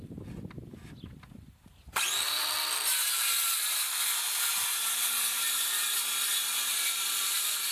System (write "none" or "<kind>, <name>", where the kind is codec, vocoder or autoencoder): vocoder, BigVGAN v2